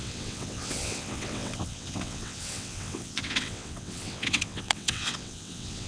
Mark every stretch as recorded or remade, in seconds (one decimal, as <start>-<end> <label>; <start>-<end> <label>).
0.0-5.9 remade